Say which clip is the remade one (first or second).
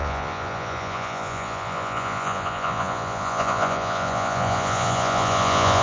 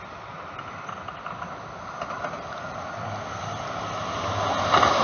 first